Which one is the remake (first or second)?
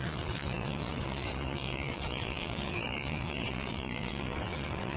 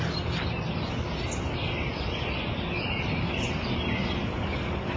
first